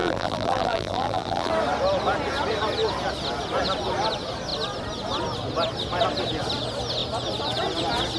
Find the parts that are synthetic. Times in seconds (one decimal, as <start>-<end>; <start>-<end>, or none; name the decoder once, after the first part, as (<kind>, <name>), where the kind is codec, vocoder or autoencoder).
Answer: 0.0-1.5 (vocoder, BigVGAN v2)